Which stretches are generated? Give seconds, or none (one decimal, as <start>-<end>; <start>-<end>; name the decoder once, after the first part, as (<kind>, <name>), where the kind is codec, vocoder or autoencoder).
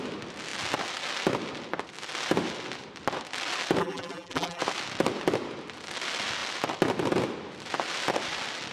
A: 3.8-4.6 (vocoder, BigVGAN v2)